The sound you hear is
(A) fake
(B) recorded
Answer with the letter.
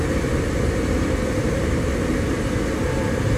B